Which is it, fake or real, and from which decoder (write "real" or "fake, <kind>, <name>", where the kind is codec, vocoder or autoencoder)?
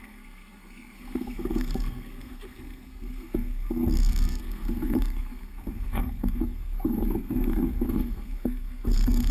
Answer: fake, codec, SNAC